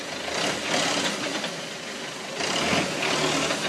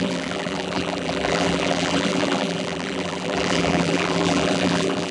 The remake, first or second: second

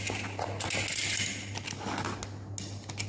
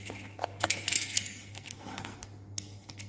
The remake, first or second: second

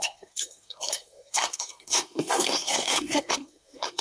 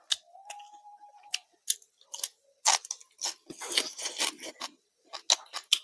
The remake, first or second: first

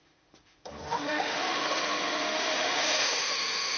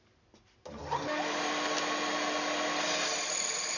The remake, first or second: first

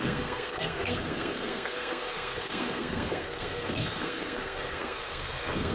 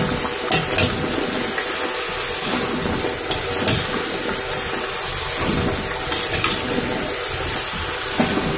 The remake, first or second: first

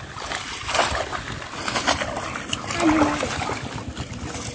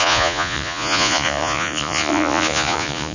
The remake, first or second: second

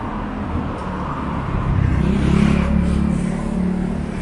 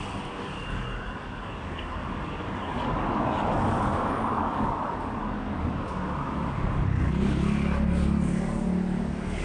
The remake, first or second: second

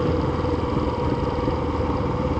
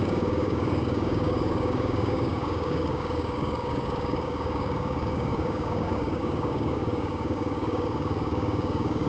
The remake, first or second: second